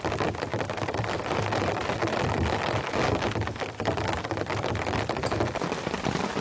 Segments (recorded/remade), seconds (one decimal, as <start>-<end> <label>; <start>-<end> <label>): 0.0-6.4 recorded

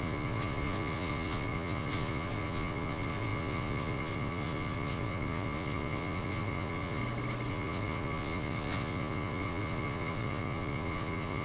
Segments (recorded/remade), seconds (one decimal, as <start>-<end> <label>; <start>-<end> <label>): 0.0-7.0 remade; 7.0-7.5 recorded; 7.5-11.4 remade

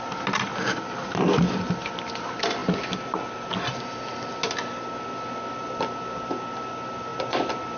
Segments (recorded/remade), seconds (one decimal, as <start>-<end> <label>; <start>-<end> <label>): 0.0-7.8 recorded

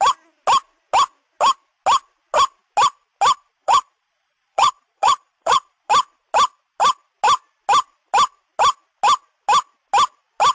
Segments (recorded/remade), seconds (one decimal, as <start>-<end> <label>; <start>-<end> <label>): 0.0-3.5 recorded; 3.5-5.9 remade; 5.9-10.5 recorded

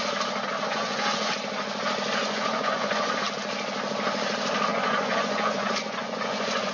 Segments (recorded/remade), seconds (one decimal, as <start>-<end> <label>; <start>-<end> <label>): 0.0-0.7 recorded; 0.7-1.3 remade; 1.3-2.2 recorded; 2.2-3.1 remade; 3.1-4.7 recorded; 4.7-6.7 remade

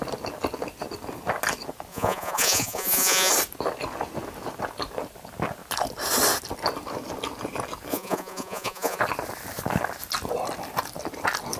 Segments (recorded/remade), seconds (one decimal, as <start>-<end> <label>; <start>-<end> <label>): 0.0-1.9 recorded; 1.9-3.3 remade; 3.3-7.9 recorded; 7.9-9.0 remade; 9.0-11.6 recorded

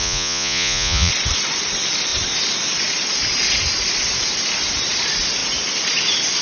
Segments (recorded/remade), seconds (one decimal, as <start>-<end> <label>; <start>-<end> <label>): 0.0-1.1 remade; 1.1-6.4 recorded